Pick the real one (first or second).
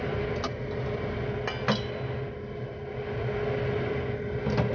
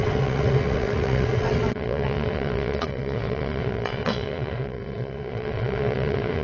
first